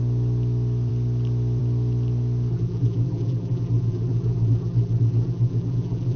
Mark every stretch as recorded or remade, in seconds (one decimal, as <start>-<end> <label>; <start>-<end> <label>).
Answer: 0.0-2.5 recorded; 2.5-6.2 remade